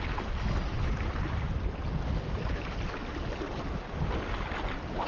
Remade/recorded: recorded